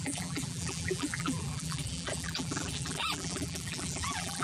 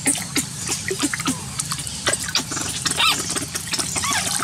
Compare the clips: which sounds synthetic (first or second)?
first